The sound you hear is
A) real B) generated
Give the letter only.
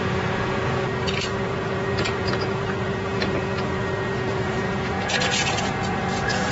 B